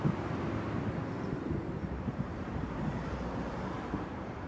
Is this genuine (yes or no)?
no